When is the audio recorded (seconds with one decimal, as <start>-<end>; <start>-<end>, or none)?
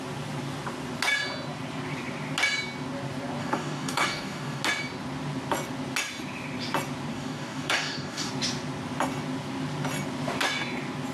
0.0-3.4; 4.6-7.1; 8.3-11.1